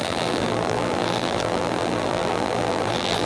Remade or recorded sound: remade